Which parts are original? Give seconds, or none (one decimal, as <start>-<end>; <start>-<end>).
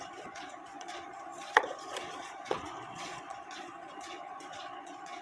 none